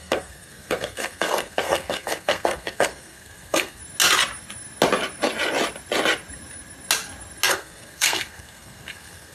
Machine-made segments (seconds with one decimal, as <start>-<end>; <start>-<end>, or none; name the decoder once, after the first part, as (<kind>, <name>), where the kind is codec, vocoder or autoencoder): 0.0-3.8 (codec, SNAC); 7.5-9.3

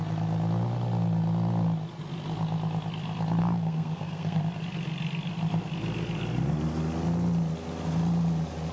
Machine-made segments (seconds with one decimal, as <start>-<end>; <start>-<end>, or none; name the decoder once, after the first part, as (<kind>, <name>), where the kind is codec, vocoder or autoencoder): 3.4-4.4 (codec, SNAC)

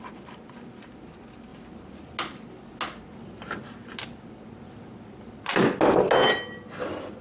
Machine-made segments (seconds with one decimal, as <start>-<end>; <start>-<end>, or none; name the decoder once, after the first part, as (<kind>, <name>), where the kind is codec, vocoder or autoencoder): none

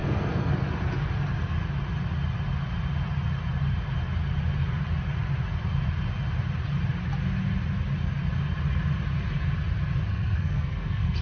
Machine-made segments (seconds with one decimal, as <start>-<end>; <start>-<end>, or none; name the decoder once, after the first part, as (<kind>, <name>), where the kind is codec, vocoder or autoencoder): 0.0-0.5 (codec, SNAC); 10.1-11.2

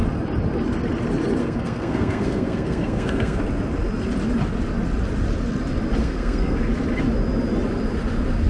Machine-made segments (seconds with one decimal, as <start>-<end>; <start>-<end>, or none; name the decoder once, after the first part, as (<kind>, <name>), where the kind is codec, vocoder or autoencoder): 1.4-3.4 (codec, SNAC); 6.0-6.6

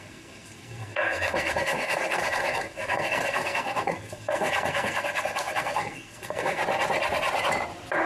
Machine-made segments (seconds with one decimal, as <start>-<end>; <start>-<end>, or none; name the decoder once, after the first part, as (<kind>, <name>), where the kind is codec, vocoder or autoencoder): 0.0-6.6 (codec, SNAC)

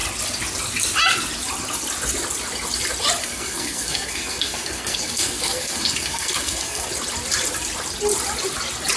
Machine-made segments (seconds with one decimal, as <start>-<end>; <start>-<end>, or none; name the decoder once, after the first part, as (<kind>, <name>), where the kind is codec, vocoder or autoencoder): 3.2-6.9 (codec, SNAC)